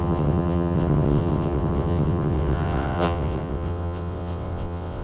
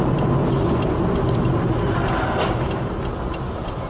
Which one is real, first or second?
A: second